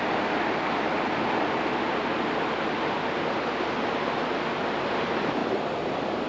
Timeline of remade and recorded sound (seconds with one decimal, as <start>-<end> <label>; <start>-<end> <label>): 0.0-6.3 recorded